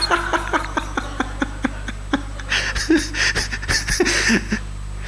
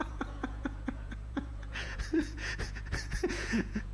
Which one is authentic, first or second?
first